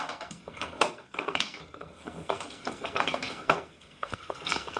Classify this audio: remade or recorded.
remade